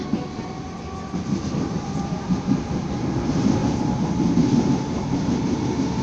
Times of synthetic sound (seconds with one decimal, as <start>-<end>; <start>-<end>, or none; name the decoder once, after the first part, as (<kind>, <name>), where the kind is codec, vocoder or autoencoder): none